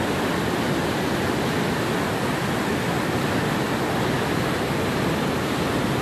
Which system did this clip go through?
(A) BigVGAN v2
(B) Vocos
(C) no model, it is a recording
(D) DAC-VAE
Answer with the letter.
C